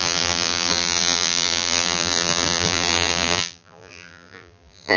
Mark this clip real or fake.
fake